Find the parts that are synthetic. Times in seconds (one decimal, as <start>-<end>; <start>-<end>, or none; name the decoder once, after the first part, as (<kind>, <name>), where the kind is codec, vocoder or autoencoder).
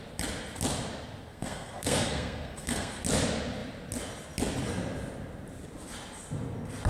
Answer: 1.3-3.0 (codec, SNAC)